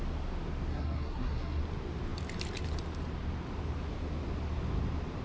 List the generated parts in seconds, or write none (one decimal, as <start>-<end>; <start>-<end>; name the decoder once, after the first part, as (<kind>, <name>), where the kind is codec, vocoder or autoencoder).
0.7-1.6 (codec, SNAC)